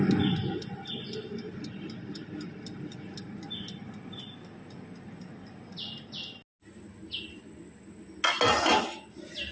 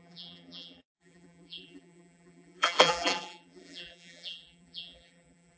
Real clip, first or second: first